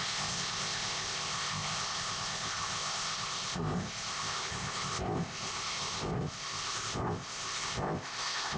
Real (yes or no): no